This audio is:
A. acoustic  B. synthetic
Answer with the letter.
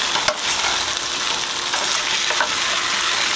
A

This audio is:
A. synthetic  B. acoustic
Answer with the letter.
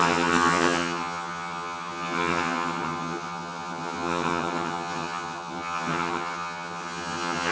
A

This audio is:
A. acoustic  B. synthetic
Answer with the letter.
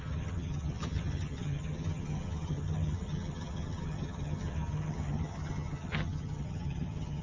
B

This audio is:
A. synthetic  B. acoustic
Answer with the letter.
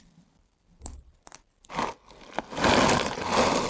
B